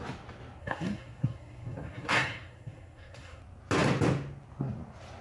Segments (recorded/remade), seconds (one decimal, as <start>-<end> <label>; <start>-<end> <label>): 0.0-0.6 recorded; 0.6-3.4 remade; 3.4-5.2 recorded